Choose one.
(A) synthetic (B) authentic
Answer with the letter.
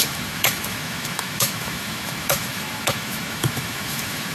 A